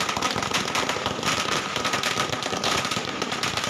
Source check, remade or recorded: remade